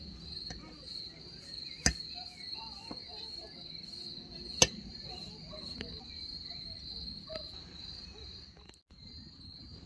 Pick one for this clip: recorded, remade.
recorded